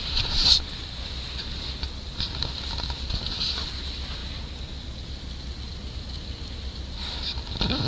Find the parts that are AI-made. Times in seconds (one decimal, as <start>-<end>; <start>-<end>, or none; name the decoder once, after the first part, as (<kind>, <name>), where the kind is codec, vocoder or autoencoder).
0.0-4.2 (vocoder, BigVGAN v2); 6.0-7.9